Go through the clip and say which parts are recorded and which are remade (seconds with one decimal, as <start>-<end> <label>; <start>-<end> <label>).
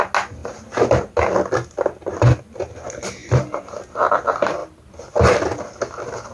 0.0-3.2 recorded; 3.2-3.8 remade; 3.8-4.6 recorded; 4.6-5.4 remade; 5.4-6.3 recorded